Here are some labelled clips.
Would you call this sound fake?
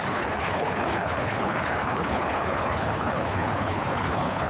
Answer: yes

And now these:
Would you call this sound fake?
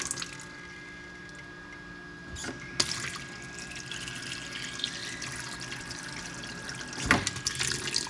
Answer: no